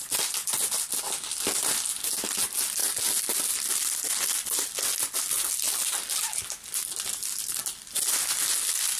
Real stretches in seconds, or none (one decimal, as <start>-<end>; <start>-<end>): 0.0-9.0